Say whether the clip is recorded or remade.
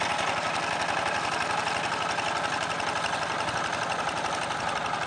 recorded